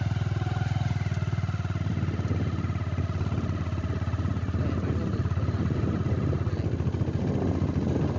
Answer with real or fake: real